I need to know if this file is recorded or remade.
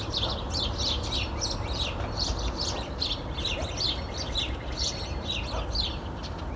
recorded